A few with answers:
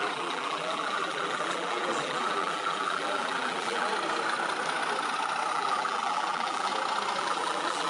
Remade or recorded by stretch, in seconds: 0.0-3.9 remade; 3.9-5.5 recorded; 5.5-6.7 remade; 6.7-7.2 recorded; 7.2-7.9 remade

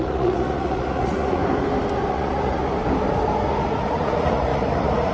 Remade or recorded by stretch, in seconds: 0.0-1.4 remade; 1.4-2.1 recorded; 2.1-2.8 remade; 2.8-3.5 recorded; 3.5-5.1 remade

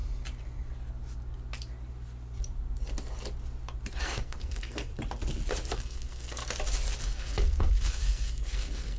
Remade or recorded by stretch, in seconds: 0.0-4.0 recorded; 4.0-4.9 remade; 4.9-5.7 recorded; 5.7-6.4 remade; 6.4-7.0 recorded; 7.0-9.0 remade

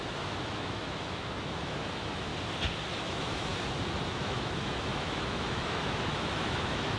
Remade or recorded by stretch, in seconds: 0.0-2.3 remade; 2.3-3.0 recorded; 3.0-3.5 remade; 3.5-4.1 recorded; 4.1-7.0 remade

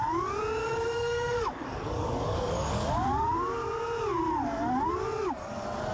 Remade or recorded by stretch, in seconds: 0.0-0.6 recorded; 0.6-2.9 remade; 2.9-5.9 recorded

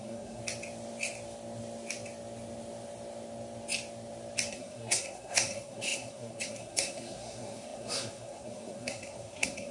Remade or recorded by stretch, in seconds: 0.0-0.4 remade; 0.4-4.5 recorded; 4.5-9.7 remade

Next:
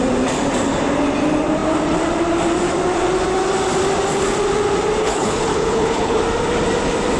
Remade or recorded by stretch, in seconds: 0.0-5.0 recorded; 5.0-6.2 remade; 6.2-7.2 recorded